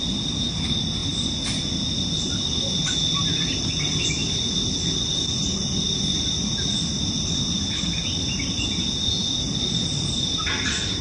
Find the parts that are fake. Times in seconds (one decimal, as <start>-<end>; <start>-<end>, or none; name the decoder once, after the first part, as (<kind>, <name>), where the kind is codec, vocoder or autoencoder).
none